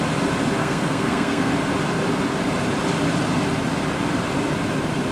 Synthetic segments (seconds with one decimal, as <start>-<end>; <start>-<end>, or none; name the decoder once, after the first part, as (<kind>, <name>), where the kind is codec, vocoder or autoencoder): 0.6-1.5 (codec, SNAC)